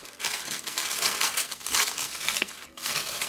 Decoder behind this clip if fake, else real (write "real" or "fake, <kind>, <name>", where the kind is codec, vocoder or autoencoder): fake, codec, SNAC